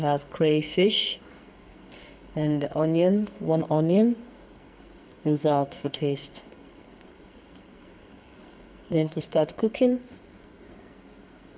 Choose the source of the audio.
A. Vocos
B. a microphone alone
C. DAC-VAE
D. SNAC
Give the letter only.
D